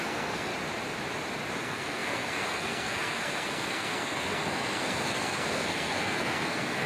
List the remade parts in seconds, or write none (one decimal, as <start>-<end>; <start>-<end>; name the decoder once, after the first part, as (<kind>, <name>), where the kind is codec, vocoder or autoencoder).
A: 0.0-0.5 (codec, SNAC); 1.6-6.9